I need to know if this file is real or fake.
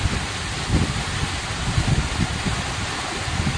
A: real